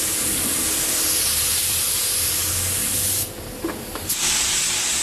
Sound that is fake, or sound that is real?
real